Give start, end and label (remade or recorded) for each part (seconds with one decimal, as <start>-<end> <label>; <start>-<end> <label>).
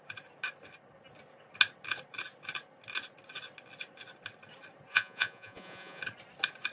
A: 0.0-4.9 recorded; 4.9-6.0 remade; 6.0-6.7 recorded